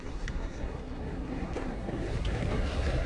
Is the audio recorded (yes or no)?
no